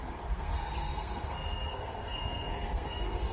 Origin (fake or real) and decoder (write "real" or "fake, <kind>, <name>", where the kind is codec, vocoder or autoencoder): fake, codec, SNAC